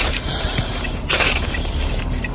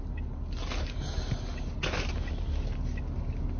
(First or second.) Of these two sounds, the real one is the second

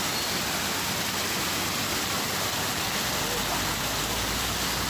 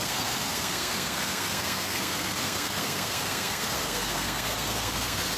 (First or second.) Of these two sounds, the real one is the first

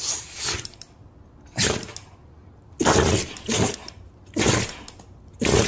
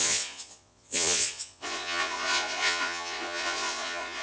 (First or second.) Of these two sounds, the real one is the first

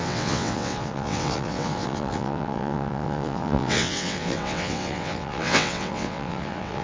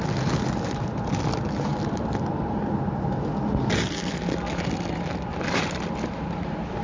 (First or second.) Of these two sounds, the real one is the second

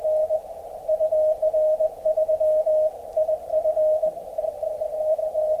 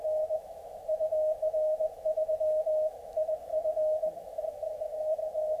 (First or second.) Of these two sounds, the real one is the first